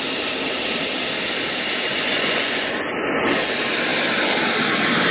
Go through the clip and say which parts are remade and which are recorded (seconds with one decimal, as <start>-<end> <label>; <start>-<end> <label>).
0.0-1.9 recorded; 1.9-2.7 remade; 2.7-5.1 recorded